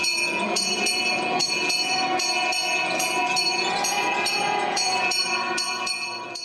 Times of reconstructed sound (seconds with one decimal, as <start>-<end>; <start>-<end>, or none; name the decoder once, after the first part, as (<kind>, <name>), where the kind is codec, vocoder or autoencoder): 0.0-6.4 (vocoder, Vocos)